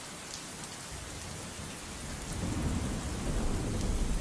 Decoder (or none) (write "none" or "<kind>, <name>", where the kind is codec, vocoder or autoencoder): none